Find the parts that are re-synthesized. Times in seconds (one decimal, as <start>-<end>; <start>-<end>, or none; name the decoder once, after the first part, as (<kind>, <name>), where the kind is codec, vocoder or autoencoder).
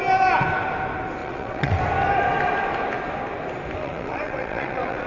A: 1.2-1.8 (vocoder, WaveNeXt); 3.8-5.1